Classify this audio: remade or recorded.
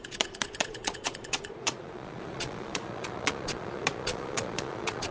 remade